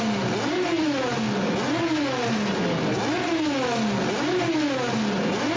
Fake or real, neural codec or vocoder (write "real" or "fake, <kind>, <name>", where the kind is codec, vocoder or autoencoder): real